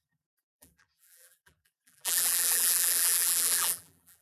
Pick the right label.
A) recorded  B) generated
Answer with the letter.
B